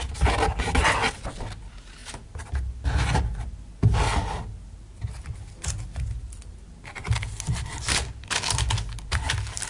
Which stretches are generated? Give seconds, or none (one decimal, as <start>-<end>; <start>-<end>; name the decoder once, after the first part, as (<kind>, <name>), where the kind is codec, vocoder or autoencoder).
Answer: none